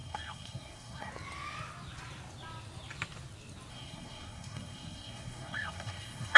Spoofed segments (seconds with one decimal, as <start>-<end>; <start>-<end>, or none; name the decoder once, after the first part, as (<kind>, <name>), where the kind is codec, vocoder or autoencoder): 0.0-1.1 (codec, SNAC); 3.7-6.4